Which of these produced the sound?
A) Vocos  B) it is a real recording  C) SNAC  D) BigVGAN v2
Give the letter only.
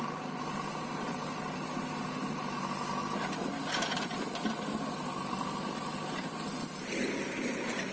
B